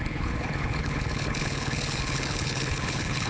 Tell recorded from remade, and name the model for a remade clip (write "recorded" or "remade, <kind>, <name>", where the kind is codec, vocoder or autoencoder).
remade, codec, HILCodec